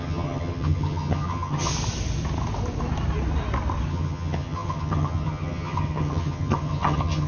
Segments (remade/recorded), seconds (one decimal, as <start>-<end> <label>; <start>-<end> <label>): 0.0-1.7 remade; 1.7-3.9 recorded; 3.9-7.3 remade